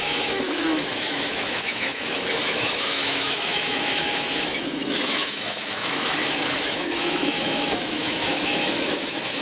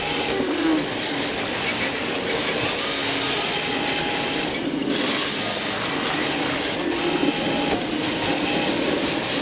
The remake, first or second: first